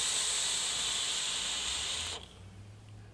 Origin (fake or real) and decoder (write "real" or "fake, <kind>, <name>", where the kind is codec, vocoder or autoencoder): real